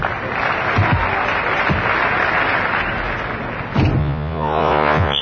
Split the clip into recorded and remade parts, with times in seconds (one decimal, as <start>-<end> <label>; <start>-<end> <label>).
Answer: 0.0-4.0 recorded; 4.0-5.2 remade